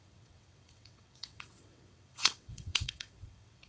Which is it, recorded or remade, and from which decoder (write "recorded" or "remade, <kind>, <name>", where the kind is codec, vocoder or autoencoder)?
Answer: remade, vocoder, WaveNeXt